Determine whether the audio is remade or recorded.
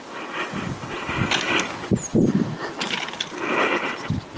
recorded